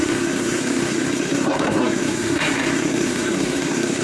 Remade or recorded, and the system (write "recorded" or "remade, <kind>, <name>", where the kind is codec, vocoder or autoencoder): remade, codec, SNAC